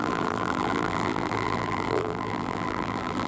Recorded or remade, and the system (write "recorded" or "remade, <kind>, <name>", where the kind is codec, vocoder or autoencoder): remade, vocoder, BigVGAN v2